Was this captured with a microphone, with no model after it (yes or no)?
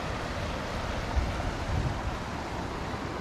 yes